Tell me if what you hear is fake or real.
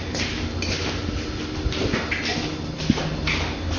real